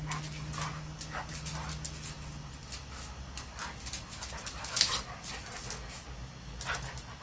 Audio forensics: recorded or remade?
recorded